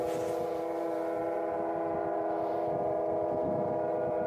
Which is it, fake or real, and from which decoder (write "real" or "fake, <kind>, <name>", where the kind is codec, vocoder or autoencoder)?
fake, vocoder, BigVGAN v2